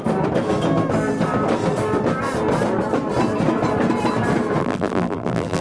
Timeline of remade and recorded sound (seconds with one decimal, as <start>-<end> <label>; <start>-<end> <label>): 0.0-4.6 recorded; 4.6-5.6 remade